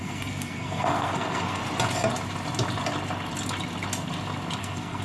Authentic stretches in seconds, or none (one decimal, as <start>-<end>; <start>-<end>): 1.6-4.6